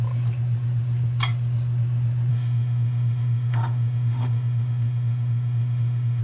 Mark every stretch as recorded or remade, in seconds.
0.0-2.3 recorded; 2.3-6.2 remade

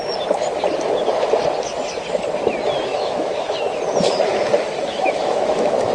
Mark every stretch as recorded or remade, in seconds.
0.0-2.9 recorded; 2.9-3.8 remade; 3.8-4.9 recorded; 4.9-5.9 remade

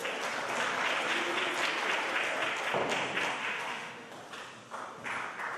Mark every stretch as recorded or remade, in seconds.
0.0-3.4 recorded; 3.4-4.1 remade; 4.1-5.6 recorded

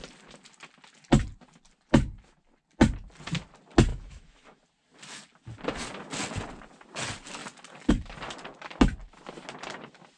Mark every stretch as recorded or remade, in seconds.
0.0-3.9 recorded; 3.9-4.6 remade; 4.6-10.2 recorded

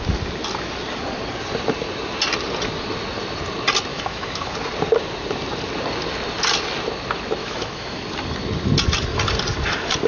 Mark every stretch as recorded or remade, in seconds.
0.0-3.9 recorded; 3.9-4.5 remade; 4.5-7.4 recorded; 7.4-8.0 remade; 8.0-10.1 recorded